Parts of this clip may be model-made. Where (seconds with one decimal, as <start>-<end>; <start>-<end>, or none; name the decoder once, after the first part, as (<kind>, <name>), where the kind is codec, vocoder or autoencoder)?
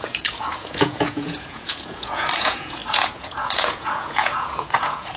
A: 0.0-5.2 (vocoder, Vocos)